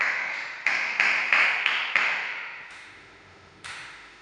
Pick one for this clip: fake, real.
fake